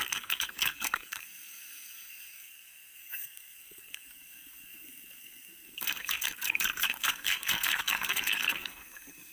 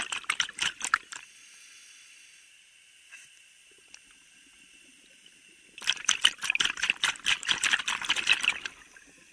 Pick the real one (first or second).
second